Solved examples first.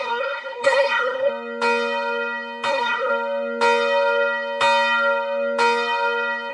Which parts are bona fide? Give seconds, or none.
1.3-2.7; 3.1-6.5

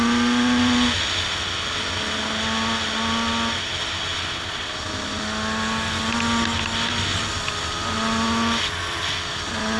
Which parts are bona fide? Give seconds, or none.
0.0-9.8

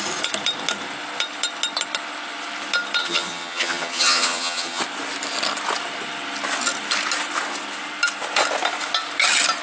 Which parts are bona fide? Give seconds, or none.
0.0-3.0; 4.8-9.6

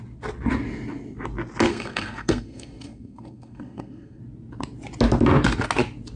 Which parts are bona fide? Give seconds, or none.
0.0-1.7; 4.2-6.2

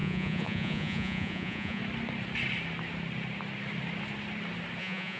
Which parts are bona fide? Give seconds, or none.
1.8-4.8